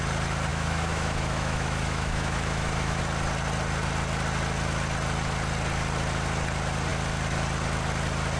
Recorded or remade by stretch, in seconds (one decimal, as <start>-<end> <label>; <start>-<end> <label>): 0.0-0.5 recorded; 0.5-3.0 remade; 3.0-8.4 recorded